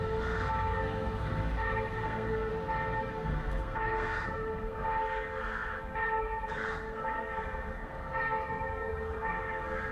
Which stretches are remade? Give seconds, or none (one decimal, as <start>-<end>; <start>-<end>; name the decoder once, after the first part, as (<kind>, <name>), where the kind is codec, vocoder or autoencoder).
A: 0.0-2.5 (codec, SNAC); 3.0-9.9